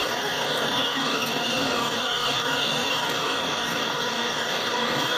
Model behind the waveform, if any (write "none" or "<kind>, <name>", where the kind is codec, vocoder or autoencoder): codec, DAC